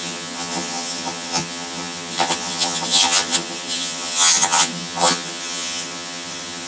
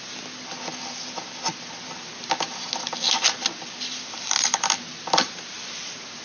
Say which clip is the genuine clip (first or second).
second